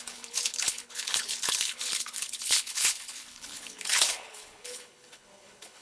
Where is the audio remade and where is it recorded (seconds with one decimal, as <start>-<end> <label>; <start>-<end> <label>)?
0.0-5.8 remade